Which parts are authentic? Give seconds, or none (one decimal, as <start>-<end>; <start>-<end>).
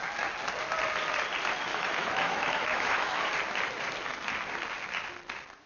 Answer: 0.0-1.7; 3.3-5.7